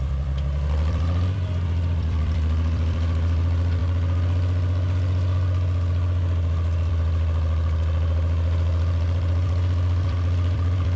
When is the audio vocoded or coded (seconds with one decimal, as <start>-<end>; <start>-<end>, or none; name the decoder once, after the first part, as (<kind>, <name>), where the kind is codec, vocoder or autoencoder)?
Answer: 0.0-3.8 (vocoder, BigVGAN v2); 6.9-11.0